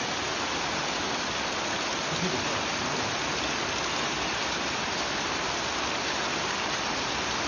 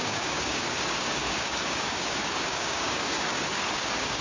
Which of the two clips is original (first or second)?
first